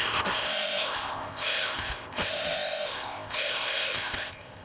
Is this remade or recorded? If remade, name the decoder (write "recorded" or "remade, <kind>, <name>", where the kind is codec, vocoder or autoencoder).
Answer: remade, codec, ZipCodec